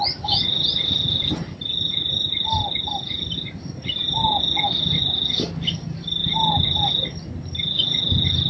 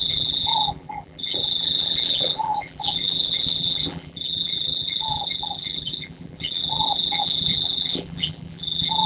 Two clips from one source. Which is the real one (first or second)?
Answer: first